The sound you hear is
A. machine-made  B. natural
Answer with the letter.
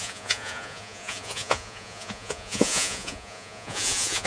A